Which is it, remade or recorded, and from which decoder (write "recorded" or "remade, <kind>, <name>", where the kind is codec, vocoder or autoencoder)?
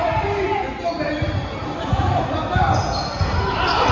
recorded